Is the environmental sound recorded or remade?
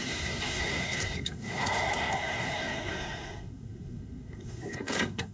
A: remade